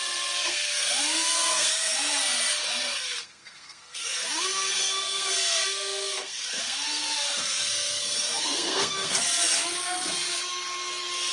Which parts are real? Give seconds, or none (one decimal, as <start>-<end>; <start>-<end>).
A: 2.2-2.7; 9.2-11.3